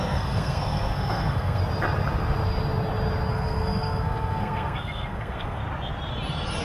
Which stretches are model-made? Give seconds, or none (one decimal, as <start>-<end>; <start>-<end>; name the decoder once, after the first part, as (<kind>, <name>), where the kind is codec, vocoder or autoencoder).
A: 0.0-1.6 (codec, SNAC); 3.3-5.6